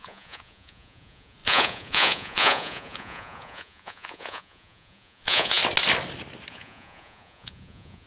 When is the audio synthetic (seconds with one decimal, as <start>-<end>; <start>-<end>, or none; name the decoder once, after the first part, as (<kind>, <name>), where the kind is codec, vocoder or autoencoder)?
0.0-5.6 (vocoder, Vocos); 6.5-8.1